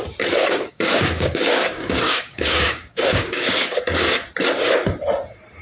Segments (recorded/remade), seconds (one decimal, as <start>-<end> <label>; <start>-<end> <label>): 0.0-0.4 recorded; 0.4-3.8 remade; 3.8-5.6 recorded